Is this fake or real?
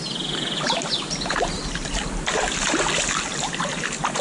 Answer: real